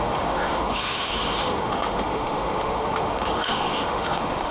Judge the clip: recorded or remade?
remade